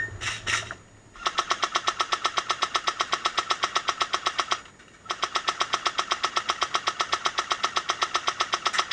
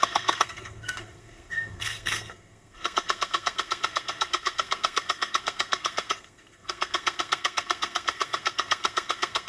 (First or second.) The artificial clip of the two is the second